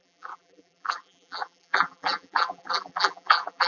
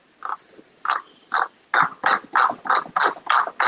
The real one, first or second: second